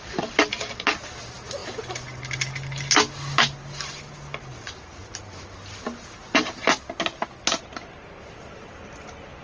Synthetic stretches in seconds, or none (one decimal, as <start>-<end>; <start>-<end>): none